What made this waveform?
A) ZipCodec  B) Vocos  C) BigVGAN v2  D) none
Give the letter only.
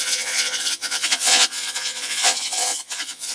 B